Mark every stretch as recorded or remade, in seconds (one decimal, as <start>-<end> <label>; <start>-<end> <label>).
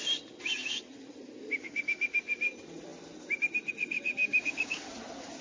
0.0-4.2 recorded; 4.2-4.8 remade; 4.8-5.4 recorded